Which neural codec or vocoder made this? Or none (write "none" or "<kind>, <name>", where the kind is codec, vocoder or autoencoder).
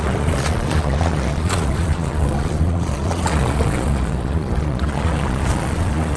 vocoder, Vocos